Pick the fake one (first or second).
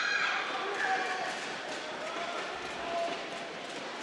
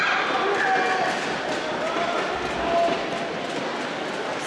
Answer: first